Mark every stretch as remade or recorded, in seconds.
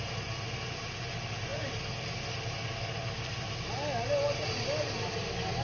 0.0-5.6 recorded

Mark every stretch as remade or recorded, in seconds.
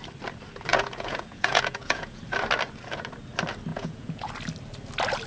0.0-0.7 recorded; 0.7-2.2 remade; 2.2-3.7 recorded; 3.7-4.3 remade; 4.3-5.3 recorded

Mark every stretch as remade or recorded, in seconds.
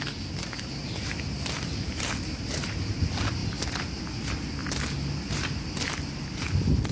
0.0-6.9 recorded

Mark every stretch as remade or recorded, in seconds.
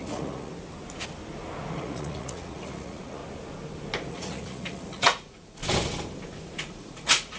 0.0-0.5 remade; 0.5-1.7 recorded; 1.7-3.2 remade; 3.2-4.1 recorded; 4.1-5.6 remade; 5.6-6.6 recorded; 6.6-7.4 remade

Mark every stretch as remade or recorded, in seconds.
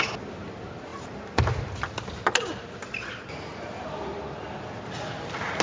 0.0-5.6 recorded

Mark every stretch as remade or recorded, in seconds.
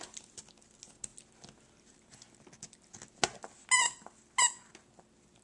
0.0-5.4 recorded